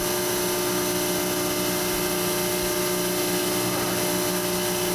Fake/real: real